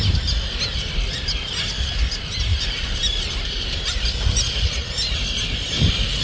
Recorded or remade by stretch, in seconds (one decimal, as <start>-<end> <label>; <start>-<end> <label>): 0.0-6.2 recorded